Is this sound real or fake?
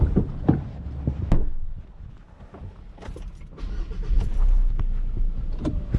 real